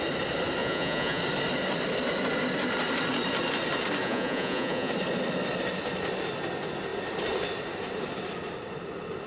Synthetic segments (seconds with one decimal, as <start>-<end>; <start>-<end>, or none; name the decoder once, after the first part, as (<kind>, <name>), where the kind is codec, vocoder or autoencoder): 0.6-1.2 (vocoder, Vocos); 4.0-4.9